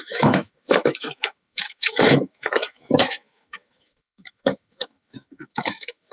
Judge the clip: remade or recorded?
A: remade